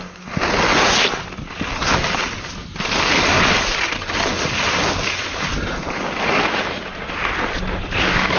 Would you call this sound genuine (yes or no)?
yes